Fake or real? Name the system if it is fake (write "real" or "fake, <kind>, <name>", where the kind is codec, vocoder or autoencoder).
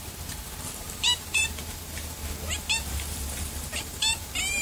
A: fake, vocoder, BigVGAN v2